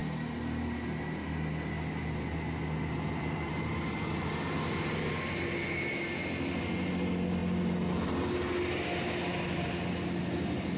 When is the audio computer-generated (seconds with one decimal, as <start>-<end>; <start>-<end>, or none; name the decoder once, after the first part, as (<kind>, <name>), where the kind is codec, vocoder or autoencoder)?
none